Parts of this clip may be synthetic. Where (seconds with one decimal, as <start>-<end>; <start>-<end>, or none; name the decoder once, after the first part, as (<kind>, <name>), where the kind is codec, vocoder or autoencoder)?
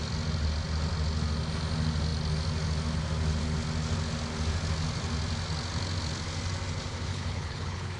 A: 7.1-8.0 (codec, HILCodec)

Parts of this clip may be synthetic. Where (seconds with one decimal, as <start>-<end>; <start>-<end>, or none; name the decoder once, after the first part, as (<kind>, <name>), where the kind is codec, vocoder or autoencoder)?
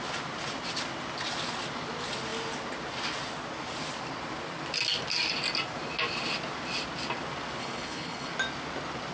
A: 7.6-8.3 (codec, HILCodec)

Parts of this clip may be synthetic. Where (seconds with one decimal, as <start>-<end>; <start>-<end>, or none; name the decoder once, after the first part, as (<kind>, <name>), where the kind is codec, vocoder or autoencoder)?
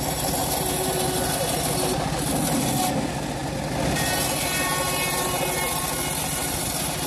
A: none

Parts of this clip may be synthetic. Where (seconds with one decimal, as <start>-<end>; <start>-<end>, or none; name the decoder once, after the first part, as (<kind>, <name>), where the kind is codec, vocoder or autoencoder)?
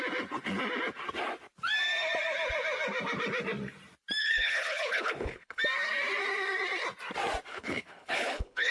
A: 4.2-5.6 (codec, HILCodec); 7.5-8.7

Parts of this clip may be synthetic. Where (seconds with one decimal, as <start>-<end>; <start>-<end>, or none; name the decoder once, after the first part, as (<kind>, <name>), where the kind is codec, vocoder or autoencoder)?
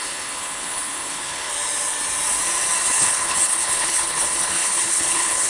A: 0.0-1.5 (codec, HILCodec); 2.9-5.5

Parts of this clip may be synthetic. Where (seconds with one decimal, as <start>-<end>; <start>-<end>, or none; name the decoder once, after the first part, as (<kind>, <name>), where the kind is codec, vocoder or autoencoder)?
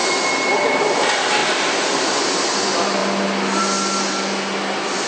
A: none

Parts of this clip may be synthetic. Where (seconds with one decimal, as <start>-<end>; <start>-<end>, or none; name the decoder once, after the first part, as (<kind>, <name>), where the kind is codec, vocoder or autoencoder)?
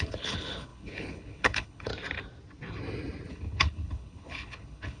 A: 0.0-1.9 (codec, HILCodec); 3.3-5.0